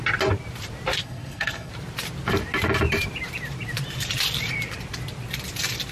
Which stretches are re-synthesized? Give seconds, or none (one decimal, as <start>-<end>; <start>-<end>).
1.0-1.7